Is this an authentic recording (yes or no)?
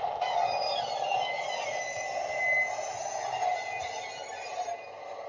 yes